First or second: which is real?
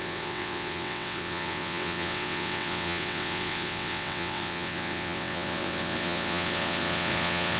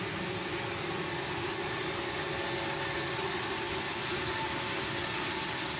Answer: second